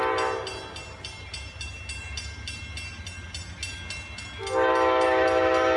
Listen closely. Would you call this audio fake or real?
real